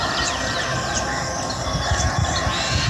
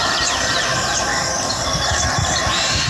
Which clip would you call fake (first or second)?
second